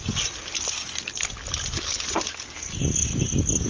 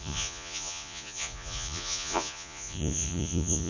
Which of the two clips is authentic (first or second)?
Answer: first